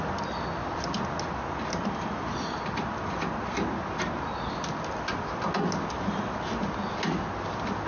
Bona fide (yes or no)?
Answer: yes